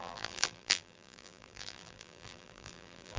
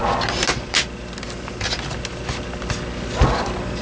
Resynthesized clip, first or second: first